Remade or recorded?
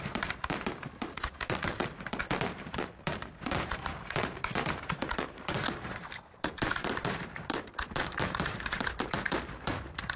remade